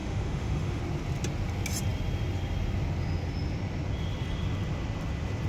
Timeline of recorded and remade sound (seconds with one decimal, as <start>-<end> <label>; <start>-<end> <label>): 0.0-0.8 remade; 0.8-5.5 recorded